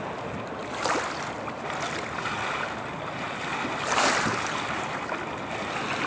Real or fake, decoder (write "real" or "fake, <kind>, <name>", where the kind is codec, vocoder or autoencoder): real